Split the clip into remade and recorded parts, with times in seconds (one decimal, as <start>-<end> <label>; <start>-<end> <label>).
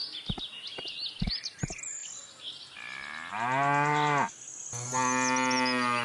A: 0.0-6.0 recorded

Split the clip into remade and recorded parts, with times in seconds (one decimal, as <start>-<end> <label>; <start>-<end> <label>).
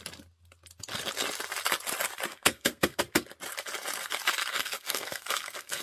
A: 0.0-2.3 recorded; 2.3-3.0 remade; 3.0-4.5 recorded; 4.5-5.8 remade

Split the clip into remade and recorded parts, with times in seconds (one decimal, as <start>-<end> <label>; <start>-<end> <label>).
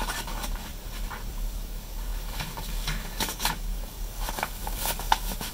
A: 0.0-0.7 remade; 0.7-1.3 recorded; 1.3-5.5 remade